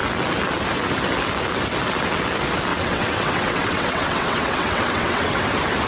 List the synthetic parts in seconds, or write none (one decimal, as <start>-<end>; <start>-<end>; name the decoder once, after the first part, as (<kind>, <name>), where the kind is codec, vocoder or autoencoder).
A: 2.7-5.4 (vocoder, WaveNeXt)